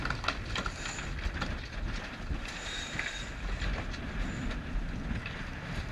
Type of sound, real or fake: real